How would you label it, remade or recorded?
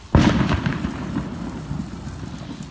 remade